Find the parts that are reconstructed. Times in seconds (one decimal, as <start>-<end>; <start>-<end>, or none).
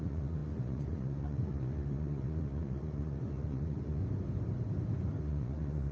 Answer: 0.0-4.0; 5.2-5.9